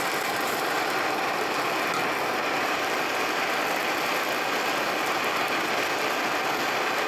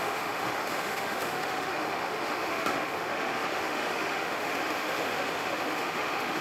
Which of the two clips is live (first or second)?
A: first